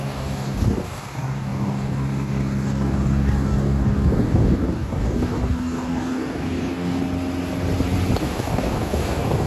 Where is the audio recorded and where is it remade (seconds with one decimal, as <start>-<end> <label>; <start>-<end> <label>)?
0.0-7.0 remade; 7.0-8.2 recorded; 8.2-9.5 remade